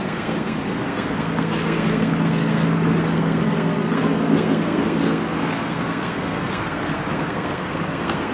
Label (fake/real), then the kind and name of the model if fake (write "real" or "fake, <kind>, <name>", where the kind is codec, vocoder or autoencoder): fake, codec, SNAC